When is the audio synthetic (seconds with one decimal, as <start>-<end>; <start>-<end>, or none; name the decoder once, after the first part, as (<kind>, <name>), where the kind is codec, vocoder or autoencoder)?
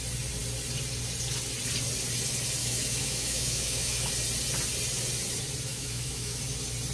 2.6-4.1 (autoencoder, DAC-VAE); 5.7-6.4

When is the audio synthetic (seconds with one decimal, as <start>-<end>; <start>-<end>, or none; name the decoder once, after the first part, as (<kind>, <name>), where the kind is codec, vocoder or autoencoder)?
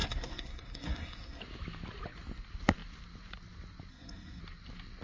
0.0-1.4 (codec, SNAC); 3.9-4.4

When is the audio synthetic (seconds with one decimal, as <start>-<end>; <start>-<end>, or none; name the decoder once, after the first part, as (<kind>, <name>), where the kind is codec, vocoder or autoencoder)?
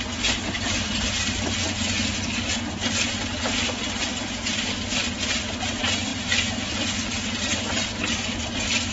6.1-7.3 (vocoder, BigVGAN v2)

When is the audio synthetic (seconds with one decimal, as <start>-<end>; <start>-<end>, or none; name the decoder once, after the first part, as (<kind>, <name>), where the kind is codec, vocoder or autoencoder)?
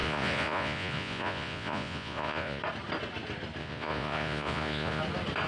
0.0-2.6 (vocoder, Vocos); 3.6-5.0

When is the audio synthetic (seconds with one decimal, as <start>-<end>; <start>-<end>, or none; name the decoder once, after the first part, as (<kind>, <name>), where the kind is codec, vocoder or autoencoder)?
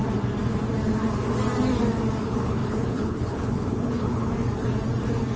2.2-4.3 (codec, HILCodec)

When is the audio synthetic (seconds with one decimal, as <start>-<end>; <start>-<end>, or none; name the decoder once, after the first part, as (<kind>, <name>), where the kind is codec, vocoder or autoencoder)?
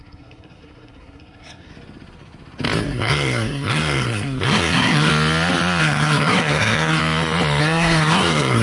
0.0-1.7 (codec, SNAC); 2.8-5.1; 5.8-7.0; 7.6-8.6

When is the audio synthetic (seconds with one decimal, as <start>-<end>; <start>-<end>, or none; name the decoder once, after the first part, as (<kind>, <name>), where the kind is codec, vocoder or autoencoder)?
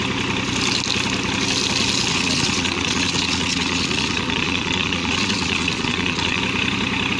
2.1-6.4 (vocoder, Vocos)